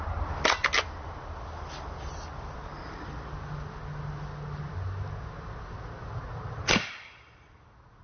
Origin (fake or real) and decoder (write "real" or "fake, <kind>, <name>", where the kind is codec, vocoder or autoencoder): real